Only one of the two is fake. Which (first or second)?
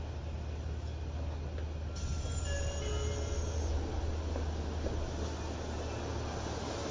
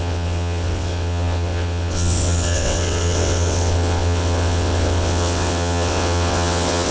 second